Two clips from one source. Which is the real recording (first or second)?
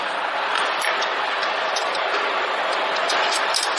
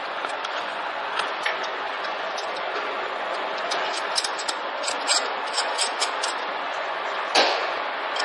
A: first